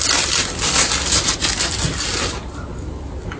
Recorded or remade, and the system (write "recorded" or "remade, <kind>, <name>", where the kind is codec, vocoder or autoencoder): recorded